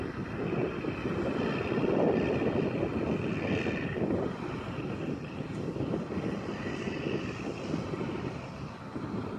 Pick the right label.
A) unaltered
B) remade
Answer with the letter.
A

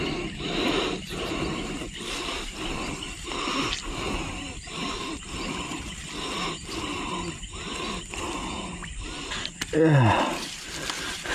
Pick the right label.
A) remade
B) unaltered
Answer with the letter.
B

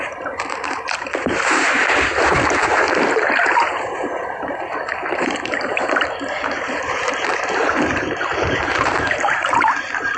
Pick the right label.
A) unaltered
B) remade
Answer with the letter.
B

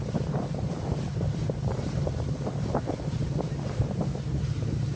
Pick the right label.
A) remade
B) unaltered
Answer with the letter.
A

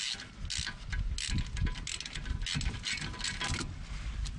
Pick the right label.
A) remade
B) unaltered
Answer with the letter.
B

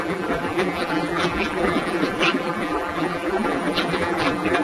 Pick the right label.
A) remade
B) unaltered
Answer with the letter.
A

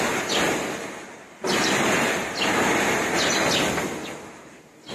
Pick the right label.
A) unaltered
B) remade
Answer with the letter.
A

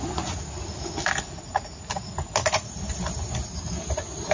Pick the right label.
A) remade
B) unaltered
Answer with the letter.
B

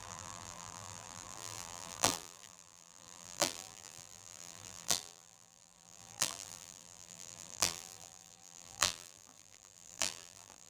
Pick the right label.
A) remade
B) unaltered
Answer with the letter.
A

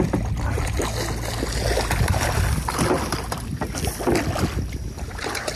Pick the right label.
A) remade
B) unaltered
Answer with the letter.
B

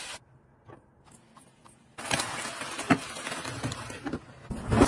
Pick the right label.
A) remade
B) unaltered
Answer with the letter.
B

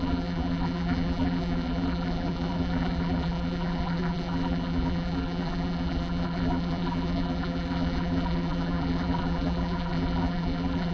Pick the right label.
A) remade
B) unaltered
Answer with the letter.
A